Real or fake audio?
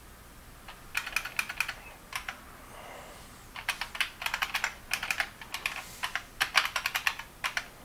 real